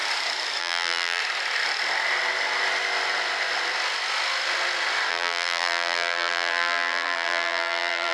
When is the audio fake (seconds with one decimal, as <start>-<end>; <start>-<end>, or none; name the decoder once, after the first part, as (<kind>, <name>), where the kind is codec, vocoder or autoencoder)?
0.6-1.2 (vocoder, BigVGAN v2); 5.1-8.1